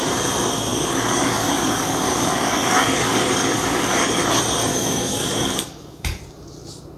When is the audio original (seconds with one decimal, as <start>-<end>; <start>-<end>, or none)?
0.0-0.7; 4.2-4.7; 6.2-7.0